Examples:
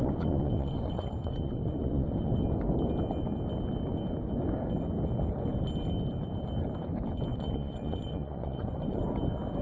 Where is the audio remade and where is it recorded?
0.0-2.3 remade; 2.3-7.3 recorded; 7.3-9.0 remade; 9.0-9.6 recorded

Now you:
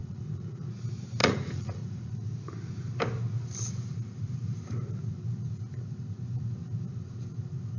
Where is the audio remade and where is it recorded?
0.0-0.7 remade; 0.7-1.2 recorded; 1.2-2.1 remade; 2.1-7.8 recorded

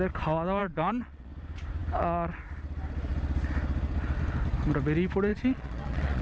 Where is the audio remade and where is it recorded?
0.0-0.6 recorded; 0.6-1.3 remade; 1.3-5.3 recorded; 5.3-6.2 remade

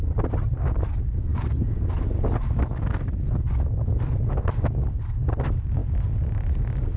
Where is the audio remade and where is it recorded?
0.0-7.0 recorded